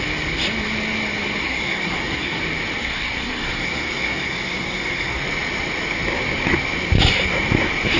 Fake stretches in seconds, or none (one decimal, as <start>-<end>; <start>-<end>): 1.4-2.4; 2.8-5.2